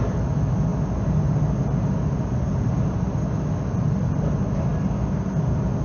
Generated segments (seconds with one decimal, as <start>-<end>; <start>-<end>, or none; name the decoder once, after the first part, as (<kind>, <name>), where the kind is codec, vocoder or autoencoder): none